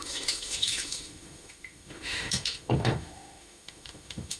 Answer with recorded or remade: remade